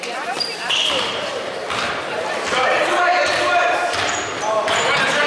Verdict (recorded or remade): remade